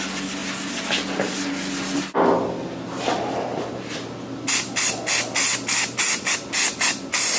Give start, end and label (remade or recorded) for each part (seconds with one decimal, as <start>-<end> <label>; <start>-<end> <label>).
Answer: 0.0-7.4 recorded